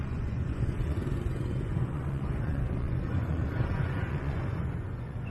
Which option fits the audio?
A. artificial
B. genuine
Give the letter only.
A